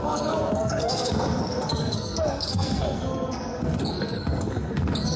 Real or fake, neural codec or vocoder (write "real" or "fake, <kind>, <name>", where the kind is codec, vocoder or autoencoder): fake, codec, SNAC